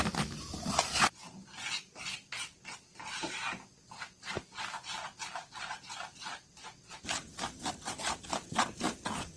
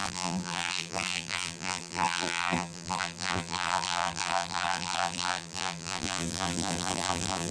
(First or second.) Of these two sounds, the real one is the first